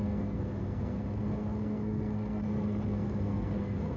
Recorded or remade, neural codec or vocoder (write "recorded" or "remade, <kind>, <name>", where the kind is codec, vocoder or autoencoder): remade, codec, SNAC